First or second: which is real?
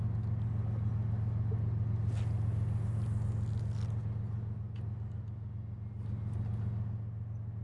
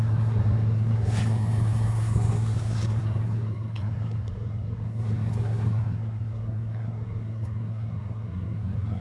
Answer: first